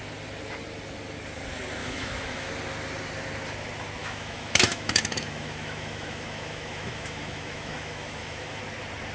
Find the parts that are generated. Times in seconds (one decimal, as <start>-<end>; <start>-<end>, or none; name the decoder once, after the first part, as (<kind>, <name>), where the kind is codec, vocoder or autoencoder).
1.8-2.5 (autoencoder, DAC-VAE); 4.0-8.6